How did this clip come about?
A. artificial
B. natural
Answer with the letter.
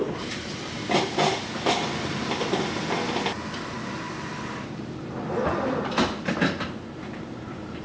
A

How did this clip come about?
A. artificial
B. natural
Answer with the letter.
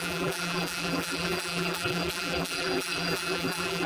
A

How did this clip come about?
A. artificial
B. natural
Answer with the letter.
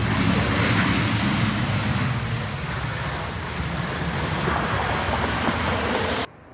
B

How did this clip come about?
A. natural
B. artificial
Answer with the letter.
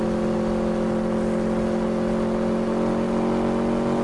A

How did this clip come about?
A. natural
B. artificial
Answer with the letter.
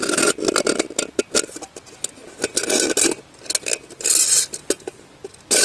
A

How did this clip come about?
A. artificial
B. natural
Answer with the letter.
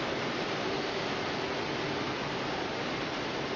B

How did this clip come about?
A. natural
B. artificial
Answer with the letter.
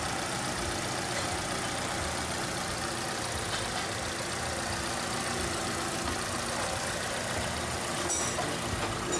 A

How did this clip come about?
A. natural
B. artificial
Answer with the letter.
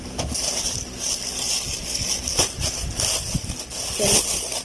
A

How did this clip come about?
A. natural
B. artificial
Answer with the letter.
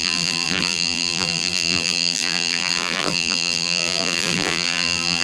B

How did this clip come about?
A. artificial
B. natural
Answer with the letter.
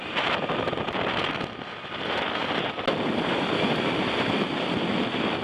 B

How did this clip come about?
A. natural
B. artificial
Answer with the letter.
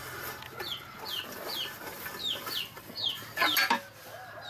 A